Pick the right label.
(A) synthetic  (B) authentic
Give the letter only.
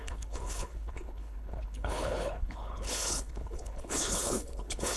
A